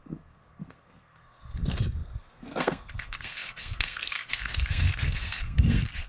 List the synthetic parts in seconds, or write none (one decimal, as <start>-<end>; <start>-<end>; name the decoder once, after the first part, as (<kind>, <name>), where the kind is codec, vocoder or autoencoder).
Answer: 0.0-6.1 (codec, SNAC)